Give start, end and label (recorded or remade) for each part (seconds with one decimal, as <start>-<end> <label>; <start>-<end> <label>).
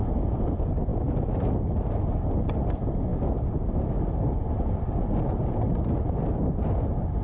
0.0-7.2 recorded